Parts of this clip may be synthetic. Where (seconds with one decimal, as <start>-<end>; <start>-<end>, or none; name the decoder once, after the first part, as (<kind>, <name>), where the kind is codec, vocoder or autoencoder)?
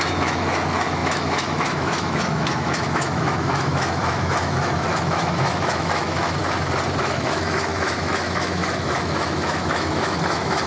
0.0-6.4 (autoencoder, DAC-VAE); 7.0-10.7